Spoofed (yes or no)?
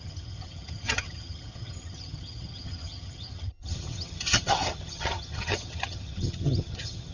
yes